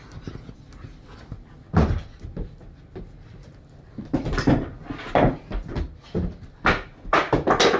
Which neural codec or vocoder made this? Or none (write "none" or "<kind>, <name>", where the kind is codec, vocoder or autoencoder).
none